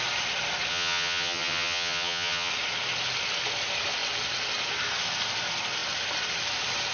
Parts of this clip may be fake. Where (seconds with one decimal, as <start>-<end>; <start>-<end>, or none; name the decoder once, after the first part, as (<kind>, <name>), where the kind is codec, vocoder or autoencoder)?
0.7-2.5 (vocoder, HiFi-GAN)